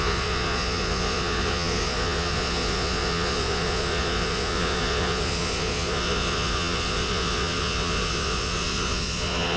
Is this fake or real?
fake